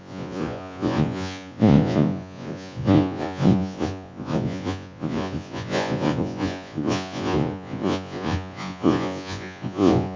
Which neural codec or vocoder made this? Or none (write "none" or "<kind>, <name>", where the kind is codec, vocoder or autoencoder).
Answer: vocoder, Vocos